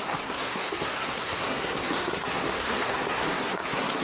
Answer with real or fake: fake